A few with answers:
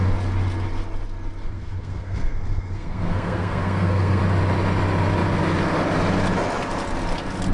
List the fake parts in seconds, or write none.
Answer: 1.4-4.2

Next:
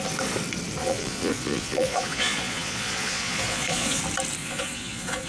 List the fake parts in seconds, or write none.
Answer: 0.8-4.0; 4.4-5.3

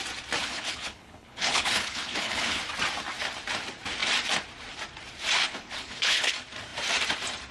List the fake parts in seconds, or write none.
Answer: 0.4-2.6; 5.4-6.3

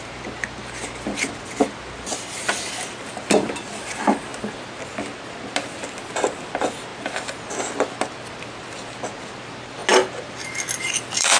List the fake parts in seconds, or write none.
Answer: none

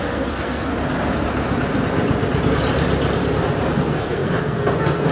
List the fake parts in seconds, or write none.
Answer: 0.0-0.7; 3.8-5.1

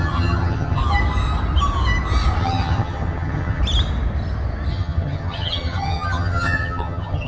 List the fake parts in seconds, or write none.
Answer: 0.0-0.8; 2.4-3.6; 4.7-7.3

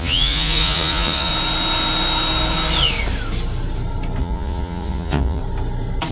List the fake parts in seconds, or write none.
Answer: 0.0-1.3; 4.2-5.4